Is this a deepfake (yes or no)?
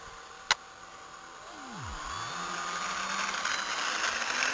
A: no